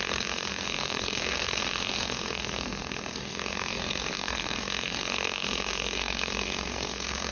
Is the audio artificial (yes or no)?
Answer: yes